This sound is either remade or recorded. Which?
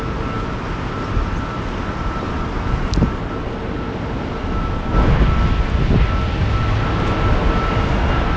recorded